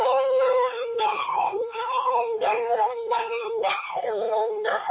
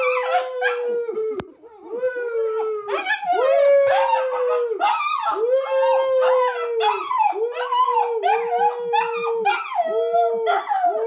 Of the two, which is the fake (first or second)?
first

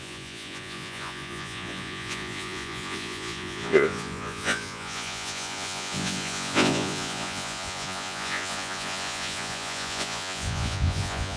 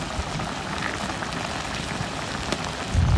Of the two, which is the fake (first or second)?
first